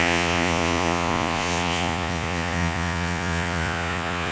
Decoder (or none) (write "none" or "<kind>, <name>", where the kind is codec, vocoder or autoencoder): vocoder, Vocos